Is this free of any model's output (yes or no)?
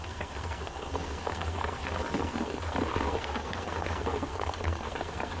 no